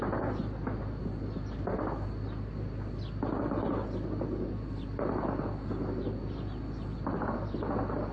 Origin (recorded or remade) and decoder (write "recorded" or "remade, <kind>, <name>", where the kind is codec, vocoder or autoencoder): recorded